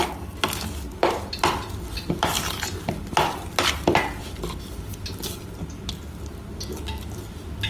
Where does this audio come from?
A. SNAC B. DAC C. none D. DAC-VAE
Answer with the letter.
C